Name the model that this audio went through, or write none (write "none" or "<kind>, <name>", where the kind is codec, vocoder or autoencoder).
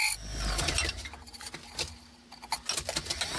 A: none